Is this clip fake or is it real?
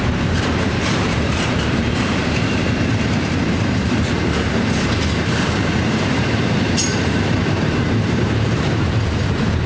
fake